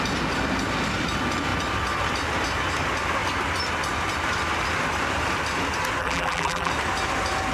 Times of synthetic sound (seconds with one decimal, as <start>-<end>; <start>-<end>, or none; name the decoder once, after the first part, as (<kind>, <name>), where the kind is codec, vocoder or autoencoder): 6.0-6.7 (vocoder, BigVGAN v2)